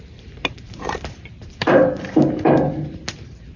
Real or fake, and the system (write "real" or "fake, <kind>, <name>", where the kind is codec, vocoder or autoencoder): fake, vocoder, BigVGAN v2